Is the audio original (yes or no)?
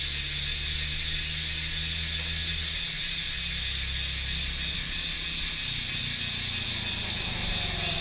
yes